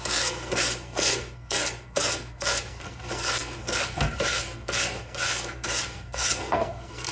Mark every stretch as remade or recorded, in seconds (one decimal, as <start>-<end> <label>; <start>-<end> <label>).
0.0-7.1 remade